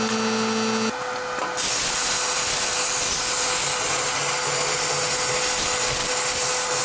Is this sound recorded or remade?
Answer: recorded